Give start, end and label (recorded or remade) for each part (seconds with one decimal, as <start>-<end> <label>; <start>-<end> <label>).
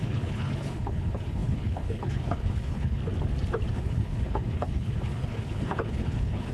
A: 0.0-3.0 remade; 3.0-3.7 recorded; 3.7-6.5 remade